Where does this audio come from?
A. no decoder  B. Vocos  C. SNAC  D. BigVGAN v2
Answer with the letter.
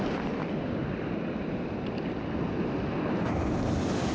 A